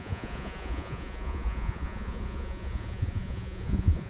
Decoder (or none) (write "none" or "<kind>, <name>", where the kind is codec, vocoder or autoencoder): vocoder, Vocos